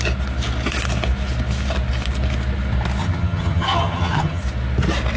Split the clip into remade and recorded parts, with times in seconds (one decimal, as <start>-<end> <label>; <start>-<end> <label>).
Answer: 0.0-3.0 recorded; 3.0-4.4 remade; 4.4-5.2 recorded